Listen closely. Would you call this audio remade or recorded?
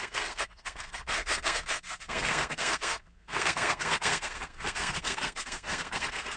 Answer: remade